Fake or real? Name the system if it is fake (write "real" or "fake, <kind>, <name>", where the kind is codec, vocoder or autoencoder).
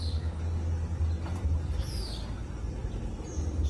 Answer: real